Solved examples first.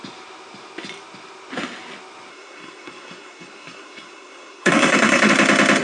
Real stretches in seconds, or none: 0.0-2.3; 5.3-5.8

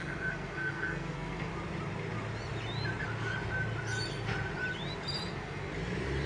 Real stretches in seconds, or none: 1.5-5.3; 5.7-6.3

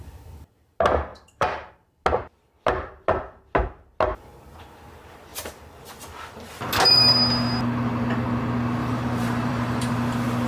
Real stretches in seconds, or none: 0.0-1.1; 1.7-8.8; 9.9-10.5